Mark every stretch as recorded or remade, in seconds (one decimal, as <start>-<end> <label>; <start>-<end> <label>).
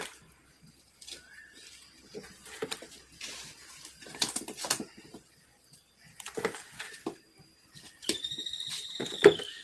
0.0-9.6 recorded